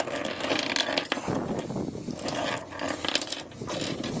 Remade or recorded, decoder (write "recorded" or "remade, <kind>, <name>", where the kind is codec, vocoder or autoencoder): recorded